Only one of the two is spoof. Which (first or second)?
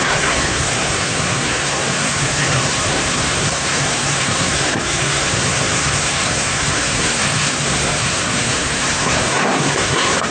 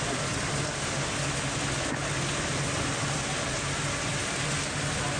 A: first